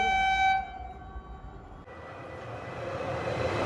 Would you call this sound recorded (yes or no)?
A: yes